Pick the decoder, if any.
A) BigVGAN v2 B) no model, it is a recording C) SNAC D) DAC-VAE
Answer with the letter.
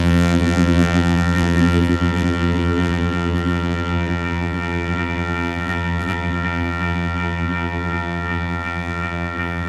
A